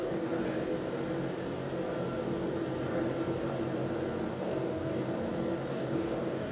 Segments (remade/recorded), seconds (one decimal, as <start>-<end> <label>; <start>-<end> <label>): 0.0-0.4 remade; 0.4-4.3 recorded; 4.3-4.9 remade; 4.9-5.7 recorded; 5.7-6.5 remade